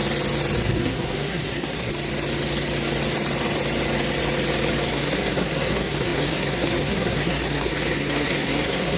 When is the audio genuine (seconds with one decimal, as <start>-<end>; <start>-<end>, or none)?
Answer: 0.0-0.6; 1.9-4.9